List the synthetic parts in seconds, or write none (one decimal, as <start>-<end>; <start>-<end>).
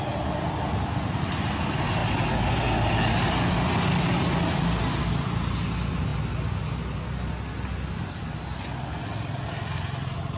none